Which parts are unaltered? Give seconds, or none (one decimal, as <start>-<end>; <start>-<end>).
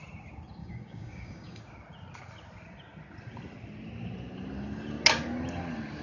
0.0-0.6; 1.6-6.0